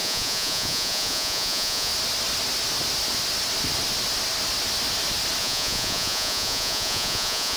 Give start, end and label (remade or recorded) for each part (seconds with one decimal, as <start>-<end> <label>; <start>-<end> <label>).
0.0-1.9 remade; 1.9-5.4 recorded; 5.4-7.6 remade